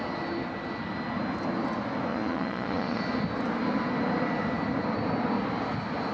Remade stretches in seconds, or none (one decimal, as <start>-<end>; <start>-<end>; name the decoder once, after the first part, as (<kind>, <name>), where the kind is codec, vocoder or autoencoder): 2.1-3.0 (vocoder, Vocos)